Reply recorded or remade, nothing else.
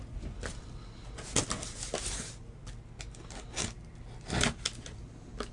recorded